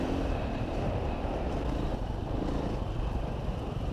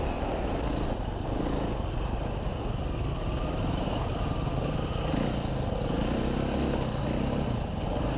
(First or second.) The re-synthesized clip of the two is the first